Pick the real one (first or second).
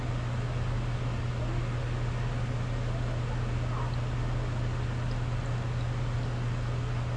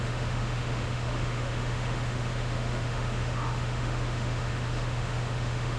first